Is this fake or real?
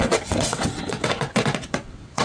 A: fake